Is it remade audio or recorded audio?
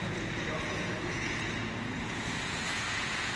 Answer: remade